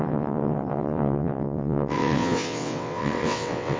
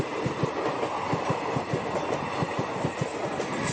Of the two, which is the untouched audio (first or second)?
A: second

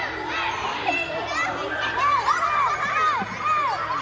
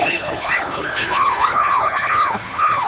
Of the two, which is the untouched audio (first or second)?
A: first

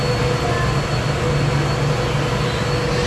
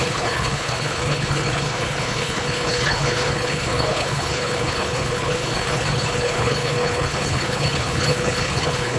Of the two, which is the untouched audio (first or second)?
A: first